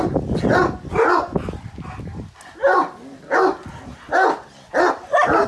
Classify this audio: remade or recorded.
recorded